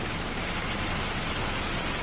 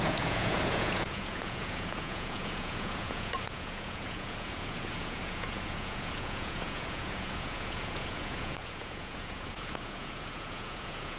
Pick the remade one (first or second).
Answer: second